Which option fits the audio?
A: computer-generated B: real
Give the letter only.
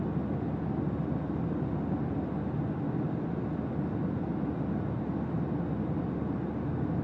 B